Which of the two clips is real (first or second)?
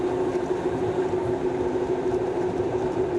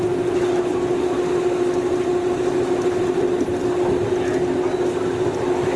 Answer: second